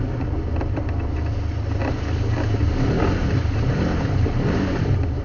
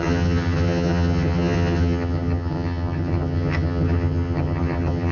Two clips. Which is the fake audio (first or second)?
second